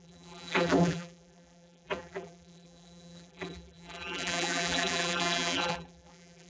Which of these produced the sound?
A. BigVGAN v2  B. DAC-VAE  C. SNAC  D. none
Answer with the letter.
A